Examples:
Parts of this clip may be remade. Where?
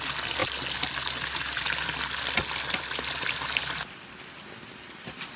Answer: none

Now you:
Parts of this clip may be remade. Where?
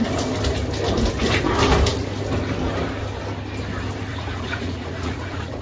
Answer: 4.1-5.6 (vocoder, Vocos)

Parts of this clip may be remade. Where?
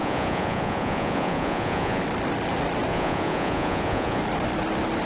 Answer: 0.0-2.0 (vocoder, Vocos); 2.9-4.2